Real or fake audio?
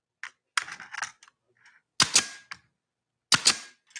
real